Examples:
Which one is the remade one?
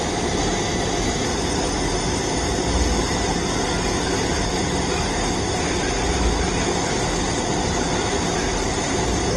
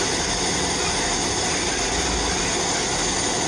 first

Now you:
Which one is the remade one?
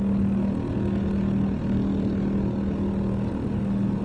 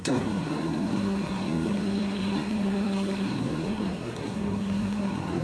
second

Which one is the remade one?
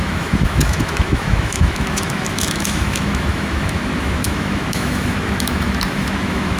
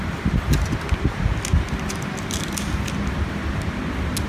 first